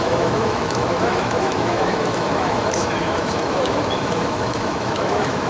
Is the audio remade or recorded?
remade